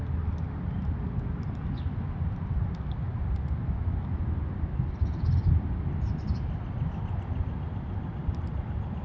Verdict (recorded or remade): recorded